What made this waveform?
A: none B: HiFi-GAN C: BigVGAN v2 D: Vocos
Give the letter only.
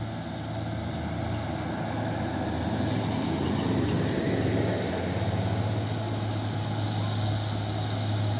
A